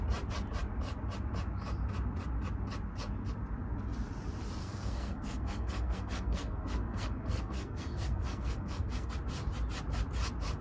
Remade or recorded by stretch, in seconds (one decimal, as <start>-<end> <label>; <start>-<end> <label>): 0.0-4.6 recorded; 4.6-9.1 remade; 9.1-10.6 recorded